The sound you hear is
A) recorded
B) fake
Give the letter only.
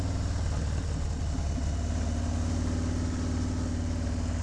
A